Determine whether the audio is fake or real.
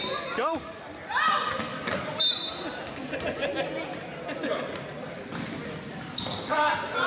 real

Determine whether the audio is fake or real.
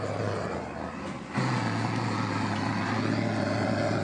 real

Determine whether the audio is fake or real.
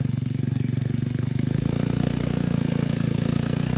fake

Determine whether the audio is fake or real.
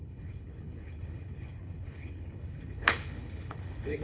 fake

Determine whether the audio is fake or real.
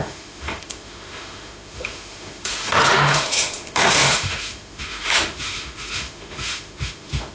fake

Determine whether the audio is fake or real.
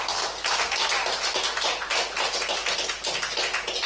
real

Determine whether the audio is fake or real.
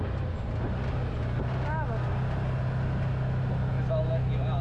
real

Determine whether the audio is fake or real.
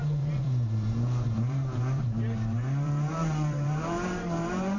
fake